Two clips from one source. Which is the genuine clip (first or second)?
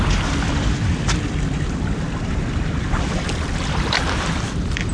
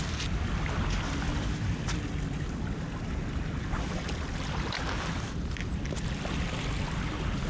second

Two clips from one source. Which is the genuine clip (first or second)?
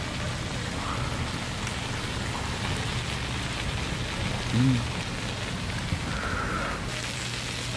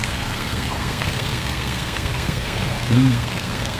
first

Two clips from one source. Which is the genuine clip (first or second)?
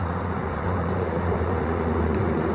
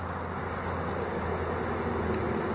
second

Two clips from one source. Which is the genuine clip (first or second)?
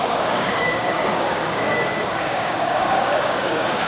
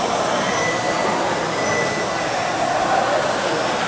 second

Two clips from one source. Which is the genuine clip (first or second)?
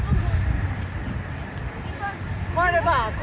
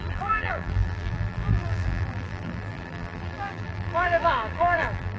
first